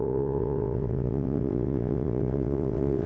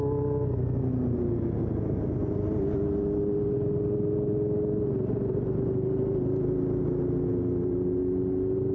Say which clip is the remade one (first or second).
first